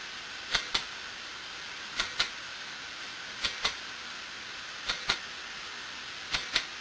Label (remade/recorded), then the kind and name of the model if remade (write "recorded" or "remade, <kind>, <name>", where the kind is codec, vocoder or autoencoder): recorded